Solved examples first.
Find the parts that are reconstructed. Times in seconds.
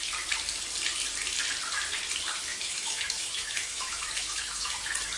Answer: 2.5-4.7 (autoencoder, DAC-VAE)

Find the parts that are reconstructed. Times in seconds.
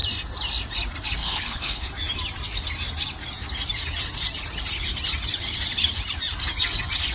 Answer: 1.2-1.9 (codec, HILCodec)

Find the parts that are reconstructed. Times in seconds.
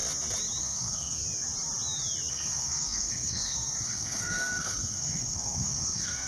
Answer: 0.6-1.2 (codec, SNAC); 2.3-6.3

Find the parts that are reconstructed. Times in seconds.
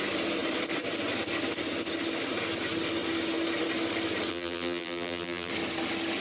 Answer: 4.3-5.5 (vocoder, BigVGAN v2)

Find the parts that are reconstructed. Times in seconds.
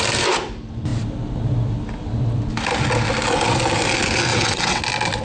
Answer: 4.3-4.8 (vocoder, WaveNeXt)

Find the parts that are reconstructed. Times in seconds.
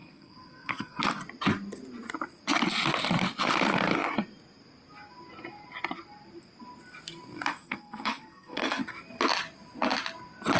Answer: 0.0-1.0 (codec, SNAC); 7.5-8.8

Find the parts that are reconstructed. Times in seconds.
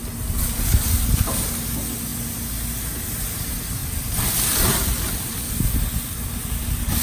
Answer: none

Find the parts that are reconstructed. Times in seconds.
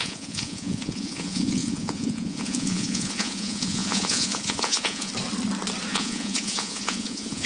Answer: 0.0-5.1 (vocoder, Vocos); 5.9-7.5